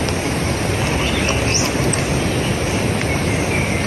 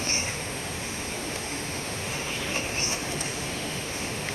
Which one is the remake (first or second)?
second